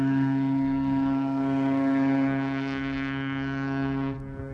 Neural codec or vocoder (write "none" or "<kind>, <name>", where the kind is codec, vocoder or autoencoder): codec, SNAC